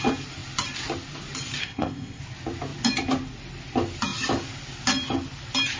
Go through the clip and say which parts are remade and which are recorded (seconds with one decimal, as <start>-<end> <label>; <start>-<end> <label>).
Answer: 0.0-1.6 recorded; 1.6-2.2 remade; 2.2-5.8 recorded